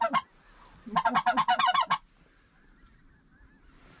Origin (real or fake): real